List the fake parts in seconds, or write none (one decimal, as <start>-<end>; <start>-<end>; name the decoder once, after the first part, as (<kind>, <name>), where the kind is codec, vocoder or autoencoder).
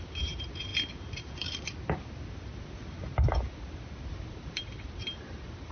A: 0.0-0.7 (vocoder, BigVGAN v2); 4.1-5.7